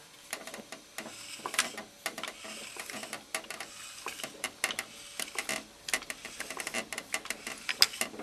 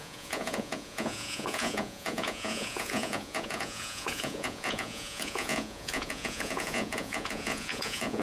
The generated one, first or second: second